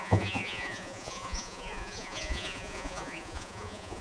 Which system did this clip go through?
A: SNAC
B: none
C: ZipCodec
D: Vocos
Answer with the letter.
D